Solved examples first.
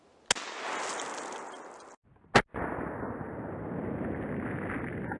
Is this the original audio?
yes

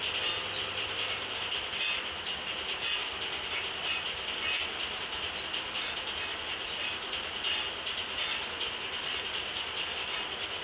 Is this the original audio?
yes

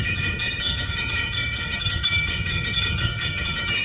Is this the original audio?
no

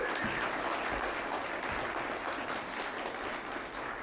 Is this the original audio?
yes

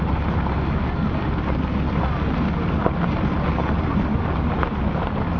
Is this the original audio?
yes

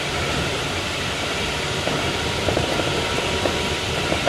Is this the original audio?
no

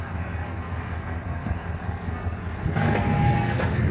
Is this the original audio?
no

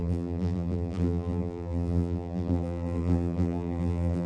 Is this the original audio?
no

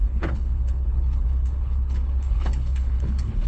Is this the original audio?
no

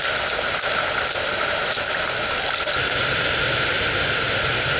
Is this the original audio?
yes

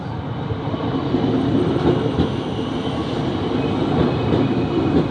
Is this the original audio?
yes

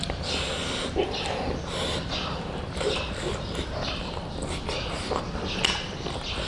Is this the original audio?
yes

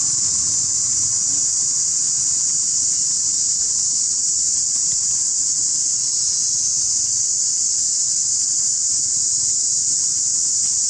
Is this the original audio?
yes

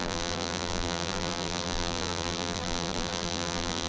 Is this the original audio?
no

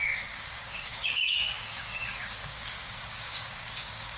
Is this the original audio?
no